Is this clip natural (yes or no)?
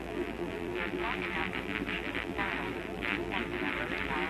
no